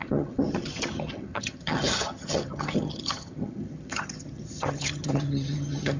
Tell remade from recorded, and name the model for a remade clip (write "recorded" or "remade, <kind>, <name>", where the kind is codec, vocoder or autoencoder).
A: remade, vocoder, HiFi-GAN